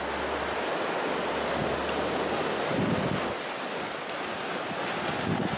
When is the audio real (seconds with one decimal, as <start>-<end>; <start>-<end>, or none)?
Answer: 0.0-5.6